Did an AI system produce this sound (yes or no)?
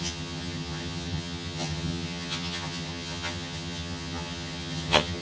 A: yes